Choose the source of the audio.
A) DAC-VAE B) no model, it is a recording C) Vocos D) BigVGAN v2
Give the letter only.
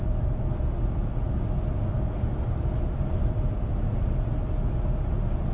B